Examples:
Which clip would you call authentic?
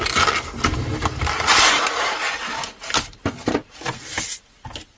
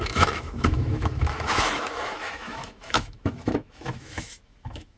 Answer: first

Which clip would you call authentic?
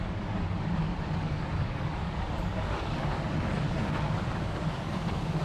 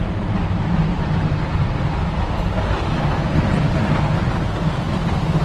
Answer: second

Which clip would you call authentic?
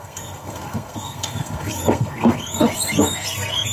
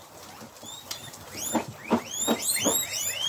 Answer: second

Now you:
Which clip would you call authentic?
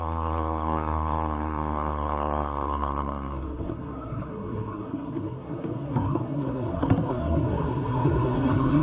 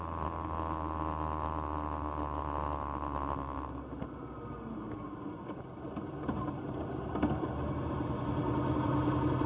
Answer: second